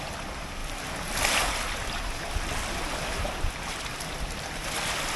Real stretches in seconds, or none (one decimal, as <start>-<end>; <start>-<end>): 0.0-5.2